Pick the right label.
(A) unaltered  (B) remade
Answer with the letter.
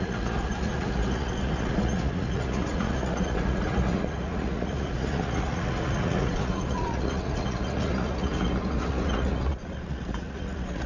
B